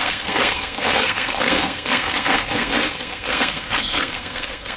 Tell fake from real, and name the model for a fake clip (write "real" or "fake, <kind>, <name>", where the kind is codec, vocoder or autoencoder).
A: fake, codec, SNAC